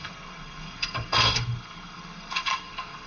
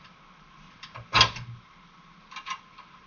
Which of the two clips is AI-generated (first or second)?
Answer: first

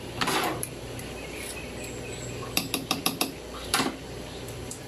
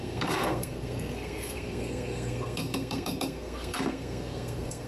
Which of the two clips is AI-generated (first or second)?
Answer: second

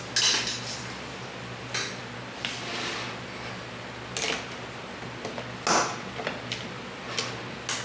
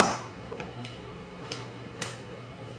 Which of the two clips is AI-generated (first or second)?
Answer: second